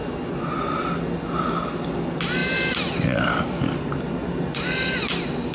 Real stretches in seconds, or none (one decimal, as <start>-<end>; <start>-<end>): 0.0-5.5